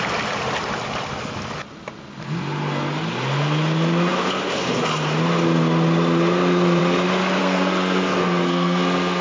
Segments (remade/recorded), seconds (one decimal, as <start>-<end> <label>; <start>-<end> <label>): 0.0-7.4 recorded; 7.4-9.2 remade